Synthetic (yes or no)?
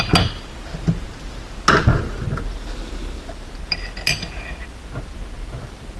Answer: no